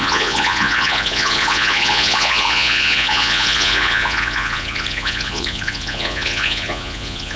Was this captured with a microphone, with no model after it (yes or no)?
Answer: no